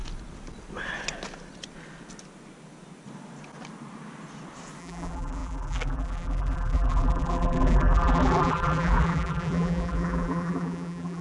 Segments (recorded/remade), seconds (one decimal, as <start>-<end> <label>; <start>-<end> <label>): 0.0-4.8 recorded; 4.8-11.2 remade